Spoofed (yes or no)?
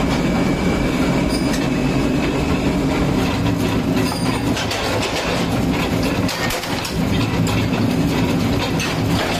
no